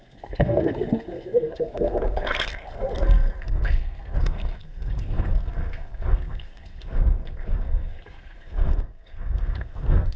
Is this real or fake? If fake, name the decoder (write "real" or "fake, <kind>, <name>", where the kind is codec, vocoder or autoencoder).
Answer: fake, codec, SNAC